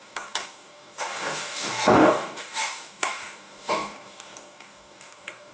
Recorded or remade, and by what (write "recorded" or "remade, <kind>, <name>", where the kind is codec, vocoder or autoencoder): remade, codec, DAC